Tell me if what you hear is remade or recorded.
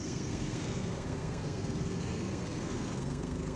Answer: remade